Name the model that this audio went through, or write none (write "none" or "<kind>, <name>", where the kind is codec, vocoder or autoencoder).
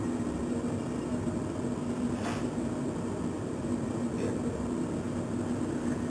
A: vocoder, BigVGAN v2